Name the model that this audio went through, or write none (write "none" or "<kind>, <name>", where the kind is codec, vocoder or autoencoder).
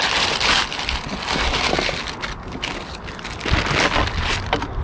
none